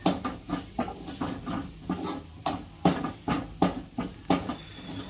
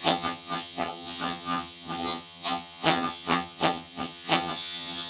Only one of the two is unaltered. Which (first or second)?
first